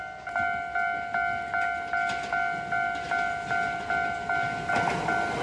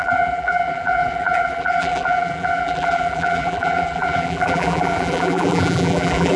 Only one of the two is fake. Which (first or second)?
second